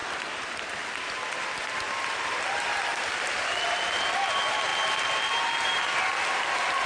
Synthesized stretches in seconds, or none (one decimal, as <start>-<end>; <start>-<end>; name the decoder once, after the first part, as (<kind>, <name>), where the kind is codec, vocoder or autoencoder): none